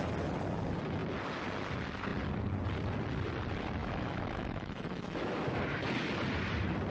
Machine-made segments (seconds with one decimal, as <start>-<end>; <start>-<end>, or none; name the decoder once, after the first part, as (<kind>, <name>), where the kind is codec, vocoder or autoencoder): 3.8-5.6 (autoencoder, DAC-VAE)

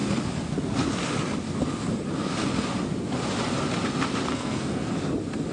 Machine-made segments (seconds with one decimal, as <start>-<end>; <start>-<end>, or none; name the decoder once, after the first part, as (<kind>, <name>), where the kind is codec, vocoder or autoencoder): 4.3-4.9 (codec, SNAC)

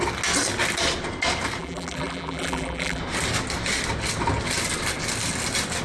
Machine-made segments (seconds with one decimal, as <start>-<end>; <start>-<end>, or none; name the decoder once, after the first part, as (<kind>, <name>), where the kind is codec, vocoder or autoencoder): 1.6-3.0 (vocoder, BigVGAN v2)

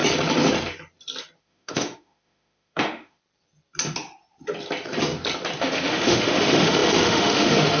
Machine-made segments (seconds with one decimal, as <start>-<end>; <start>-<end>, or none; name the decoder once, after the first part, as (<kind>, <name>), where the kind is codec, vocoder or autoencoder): 1.4-3.2 (autoencoder, DAC-VAE); 5.6-7.8